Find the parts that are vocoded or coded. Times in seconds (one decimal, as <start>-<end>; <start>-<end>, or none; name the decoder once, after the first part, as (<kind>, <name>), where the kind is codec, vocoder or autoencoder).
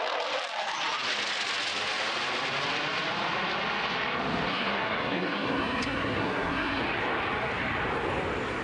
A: 4.5-6.8 (codec, SNAC)